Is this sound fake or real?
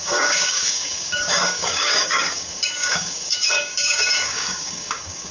fake